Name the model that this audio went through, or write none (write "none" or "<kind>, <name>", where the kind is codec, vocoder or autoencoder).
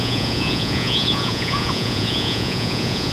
vocoder, Vocos